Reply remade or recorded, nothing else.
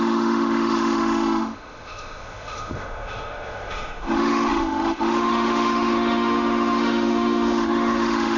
remade